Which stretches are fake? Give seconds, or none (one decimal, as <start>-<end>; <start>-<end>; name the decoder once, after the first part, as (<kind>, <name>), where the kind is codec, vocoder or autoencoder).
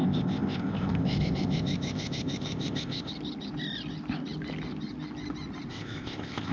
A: 0.0-3.1 (codec, ZipCodec); 5.7-6.5